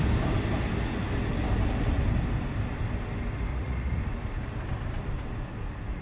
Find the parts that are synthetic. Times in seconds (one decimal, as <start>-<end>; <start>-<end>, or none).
3.5-4.0